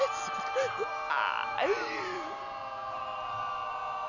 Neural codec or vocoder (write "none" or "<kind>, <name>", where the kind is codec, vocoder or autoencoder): none